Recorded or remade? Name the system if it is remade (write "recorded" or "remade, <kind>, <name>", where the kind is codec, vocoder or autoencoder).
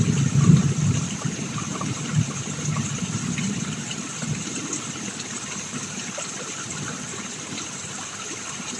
recorded